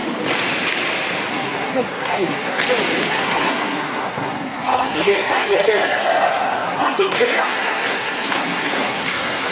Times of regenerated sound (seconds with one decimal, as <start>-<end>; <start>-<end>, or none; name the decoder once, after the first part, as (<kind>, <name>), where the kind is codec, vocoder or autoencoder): 1.3-2.6 (codec, SNAC); 3.1-9.5